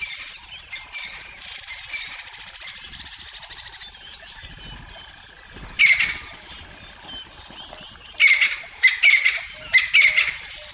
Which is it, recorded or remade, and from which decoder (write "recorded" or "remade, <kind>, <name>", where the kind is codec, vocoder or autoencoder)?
recorded